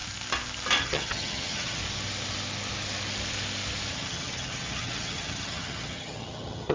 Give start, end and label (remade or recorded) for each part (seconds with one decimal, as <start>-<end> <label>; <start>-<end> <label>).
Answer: 0.0-0.8 recorded; 0.8-1.8 remade; 1.8-3.9 recorded; 3.9-6.7 remade